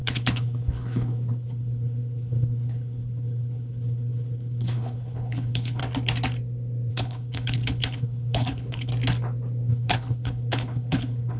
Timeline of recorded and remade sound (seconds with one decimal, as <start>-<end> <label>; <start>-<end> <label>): 0.0-5.8 remade; 5.8-6.9 recorded; 6.9-8.9 remade; 8.9-9.7 recorded; 9.7-11.4 remade